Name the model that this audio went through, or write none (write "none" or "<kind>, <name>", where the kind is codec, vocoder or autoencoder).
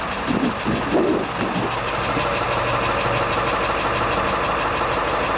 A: none